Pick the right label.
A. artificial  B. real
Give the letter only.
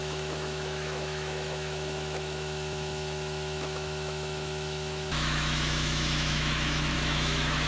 A